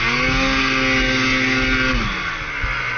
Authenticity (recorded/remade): recorded